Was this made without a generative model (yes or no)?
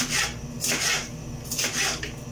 yes